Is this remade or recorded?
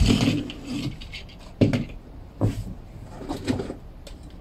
recorded